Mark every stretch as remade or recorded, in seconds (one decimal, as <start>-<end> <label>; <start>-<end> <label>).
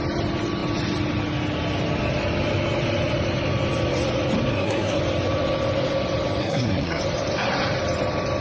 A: 0.0-4.5 recorded; 4.5-5.0 remade; 5.0-6.4 recorded; 6.4-7.0 remade; 7.0-8.4 recorded